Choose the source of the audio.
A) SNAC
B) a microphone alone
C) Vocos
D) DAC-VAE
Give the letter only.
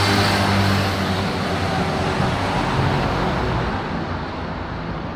B